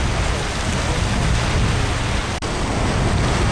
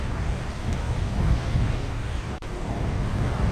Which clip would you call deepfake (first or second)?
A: second